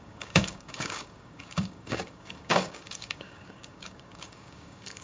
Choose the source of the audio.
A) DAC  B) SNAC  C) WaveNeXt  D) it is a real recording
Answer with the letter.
A